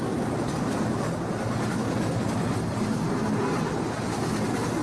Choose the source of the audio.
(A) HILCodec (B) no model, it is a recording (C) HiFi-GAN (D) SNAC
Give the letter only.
B